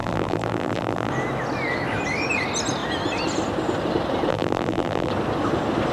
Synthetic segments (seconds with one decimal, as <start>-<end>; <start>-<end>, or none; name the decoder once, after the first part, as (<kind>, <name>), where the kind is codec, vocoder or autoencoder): 0.0-1.1 (vocoder, BigVGAN v2); 4.3-5.1